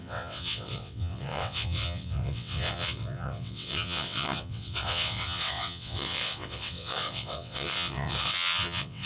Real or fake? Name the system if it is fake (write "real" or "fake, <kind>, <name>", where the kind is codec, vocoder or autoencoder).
fake, vocoder, WaveNeXt